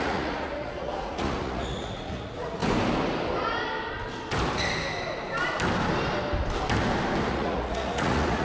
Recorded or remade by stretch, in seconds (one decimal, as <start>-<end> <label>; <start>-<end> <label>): 0.0-2.6 remade; 2.6-7.3 recorded; 7.3-8.4 remade